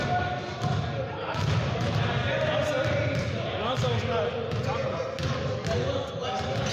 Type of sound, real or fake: real